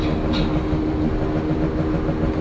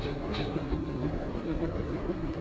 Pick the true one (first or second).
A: first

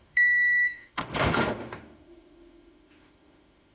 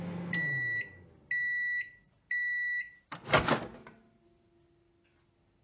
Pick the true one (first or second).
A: second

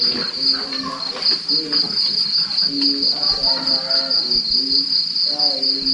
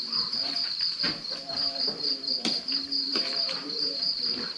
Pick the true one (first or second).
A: first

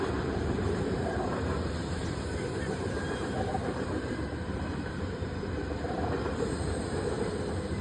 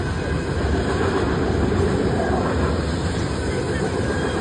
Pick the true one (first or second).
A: second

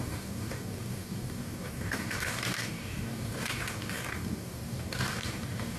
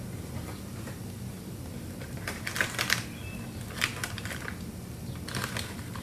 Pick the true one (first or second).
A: second